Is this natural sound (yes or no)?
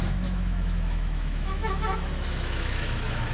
no